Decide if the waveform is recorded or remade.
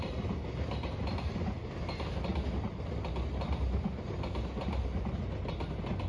recorded